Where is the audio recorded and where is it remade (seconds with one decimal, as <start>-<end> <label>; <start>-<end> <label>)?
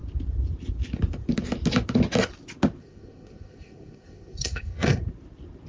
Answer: 0.0-2.8 recorded; 2.8-5.0 remade; 5.0-5.7 recorded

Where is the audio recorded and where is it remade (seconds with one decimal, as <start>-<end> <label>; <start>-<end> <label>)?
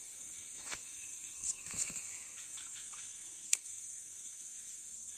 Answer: 0.0-5.2 remade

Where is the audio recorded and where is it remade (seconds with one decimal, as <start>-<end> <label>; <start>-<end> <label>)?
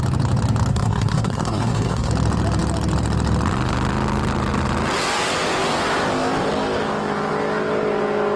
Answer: 0.0-0.7 recorded; 0.7-2.1 remade; 2.1-8.4 recorded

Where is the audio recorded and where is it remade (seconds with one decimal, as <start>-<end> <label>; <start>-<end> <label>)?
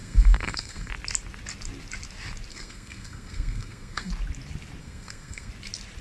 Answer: 0.0-0.9 remade; 0.9-2.5 recorded; 2.5-4.1 remade; 4.1-4.8 recorded; 4.8-5.5 remade; 5.5-6.0 recorded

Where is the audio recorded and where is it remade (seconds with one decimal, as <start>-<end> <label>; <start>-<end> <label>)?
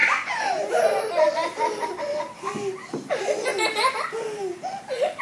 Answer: 0.0-5.2 recorded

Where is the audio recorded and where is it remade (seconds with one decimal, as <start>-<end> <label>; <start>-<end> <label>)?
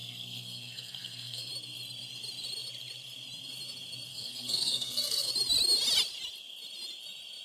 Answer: 0.0-1.5 remade; 1.5-4.1 recorded; 4.1-5.3 remade; 5.3-7.4 recorded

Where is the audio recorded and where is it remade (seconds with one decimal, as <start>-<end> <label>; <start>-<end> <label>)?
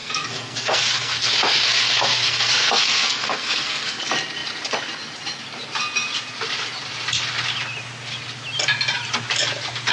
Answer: 0.0-4.0 remade; 4.0-9.9 recorded